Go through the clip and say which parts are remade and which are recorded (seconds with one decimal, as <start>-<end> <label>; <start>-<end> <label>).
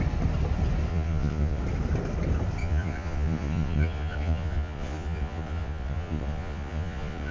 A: 0.0-0.9 recorded; 0.9-1.6 remade; 1.6-2.6 recorded; 2.6-7.3 remade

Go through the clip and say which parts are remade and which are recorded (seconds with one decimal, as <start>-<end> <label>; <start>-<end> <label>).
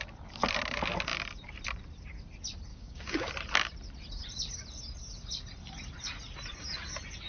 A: 0.0-2.7 recorded; 2.7-3.3 remade; 3.3-7.3 recorded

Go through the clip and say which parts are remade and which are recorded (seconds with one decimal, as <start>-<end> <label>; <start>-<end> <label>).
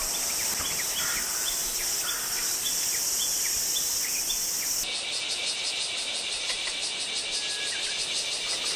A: 0.0-8.8 recorded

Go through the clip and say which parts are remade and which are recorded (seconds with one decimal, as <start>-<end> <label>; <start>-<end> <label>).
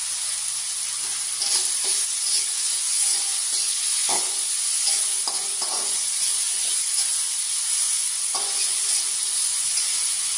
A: 0.0-2.2 recorded; 2.2-10.4 remade